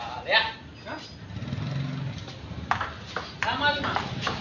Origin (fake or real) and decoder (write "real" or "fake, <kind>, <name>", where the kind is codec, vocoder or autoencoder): real